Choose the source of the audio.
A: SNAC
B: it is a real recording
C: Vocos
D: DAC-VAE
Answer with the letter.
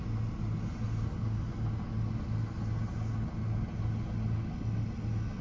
B